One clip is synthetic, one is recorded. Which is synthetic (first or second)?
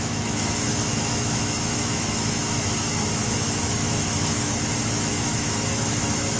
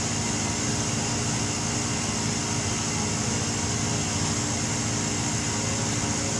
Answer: first